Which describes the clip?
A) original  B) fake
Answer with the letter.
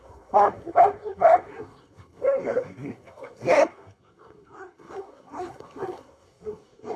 B